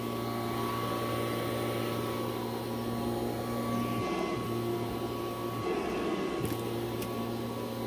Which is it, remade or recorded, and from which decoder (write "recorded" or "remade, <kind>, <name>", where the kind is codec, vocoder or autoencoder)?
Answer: recorded